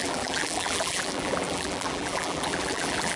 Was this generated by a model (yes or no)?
yes